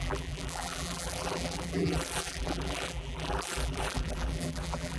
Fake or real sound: fake